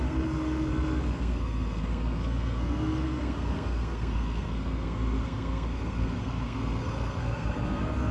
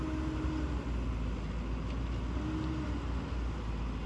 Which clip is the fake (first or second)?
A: first